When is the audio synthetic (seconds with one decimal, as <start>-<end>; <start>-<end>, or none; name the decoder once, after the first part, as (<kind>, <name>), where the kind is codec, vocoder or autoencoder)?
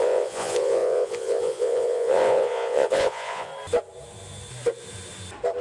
0.0-3.5 (vocoder, Vocos)